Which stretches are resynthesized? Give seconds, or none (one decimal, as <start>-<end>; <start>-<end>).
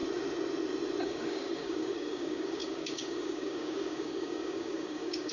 1.0-5.3